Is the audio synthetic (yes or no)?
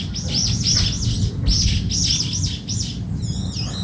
no